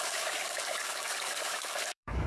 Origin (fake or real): fake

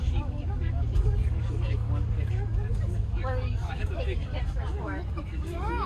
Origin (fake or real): fake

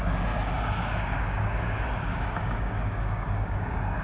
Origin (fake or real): fake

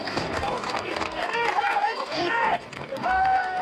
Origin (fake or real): fake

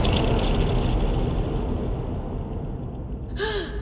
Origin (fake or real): real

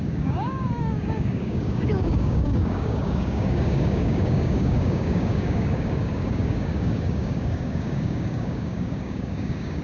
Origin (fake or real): fake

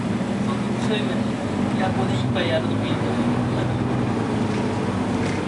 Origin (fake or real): real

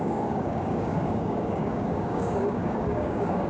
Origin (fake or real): fake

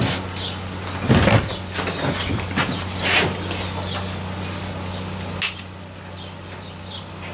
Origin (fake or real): real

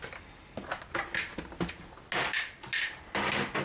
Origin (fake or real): real